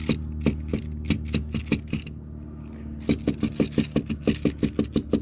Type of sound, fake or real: real